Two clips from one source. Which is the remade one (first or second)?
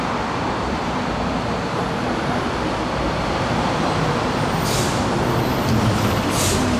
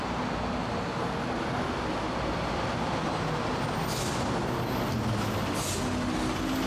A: first